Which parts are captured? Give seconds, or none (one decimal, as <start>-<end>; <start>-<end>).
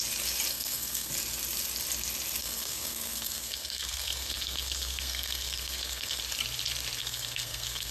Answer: 0.0-0.5; 1.1-2.4; 6.2-7.0